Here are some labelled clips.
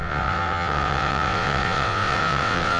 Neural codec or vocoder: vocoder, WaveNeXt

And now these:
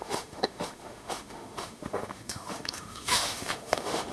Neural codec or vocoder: autoencoder, DAC-VAE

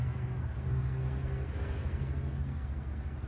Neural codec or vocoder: codec, SNAC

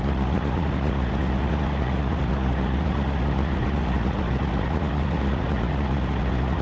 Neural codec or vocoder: vocoder, Vocos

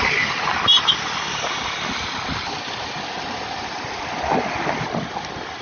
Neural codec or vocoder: none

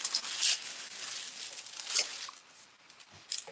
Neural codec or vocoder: none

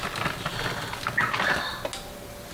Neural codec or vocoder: none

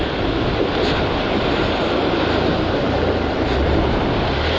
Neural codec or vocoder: none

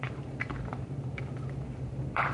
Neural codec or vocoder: vocoder, BigVGAN v2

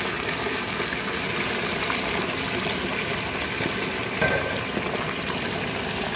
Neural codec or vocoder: none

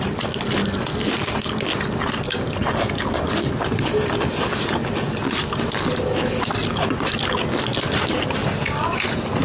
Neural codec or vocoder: none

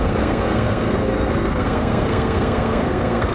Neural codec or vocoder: codec, SNAC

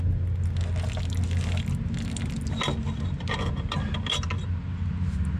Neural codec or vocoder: none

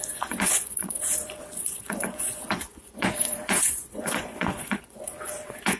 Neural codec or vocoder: vocoder, Vocos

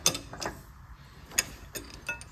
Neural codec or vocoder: none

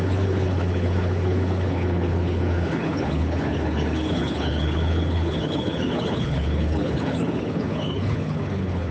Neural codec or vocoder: codec, HILCodec